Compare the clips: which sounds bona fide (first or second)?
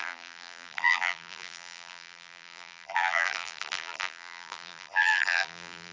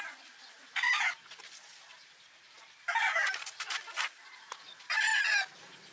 second